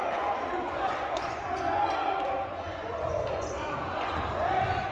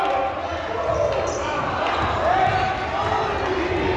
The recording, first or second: second